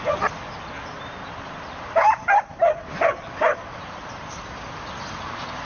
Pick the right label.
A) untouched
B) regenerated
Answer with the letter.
A